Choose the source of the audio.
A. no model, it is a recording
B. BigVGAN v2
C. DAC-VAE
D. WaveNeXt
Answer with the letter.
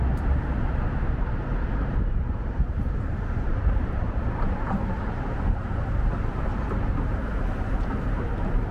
B